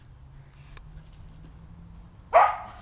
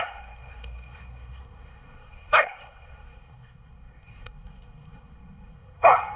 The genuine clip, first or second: first